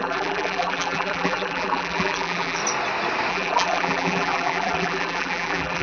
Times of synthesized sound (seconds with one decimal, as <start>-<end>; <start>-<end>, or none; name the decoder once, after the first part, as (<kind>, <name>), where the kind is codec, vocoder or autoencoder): 0.0-2.6 (vocoder, BigVGAN v2); 3.3-5.8